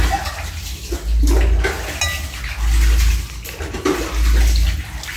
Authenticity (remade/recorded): recorded